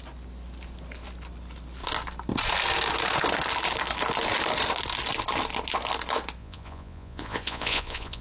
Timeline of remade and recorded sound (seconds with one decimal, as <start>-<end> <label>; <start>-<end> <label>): 0.0-6.4 recorded; 6.4-8.2 remade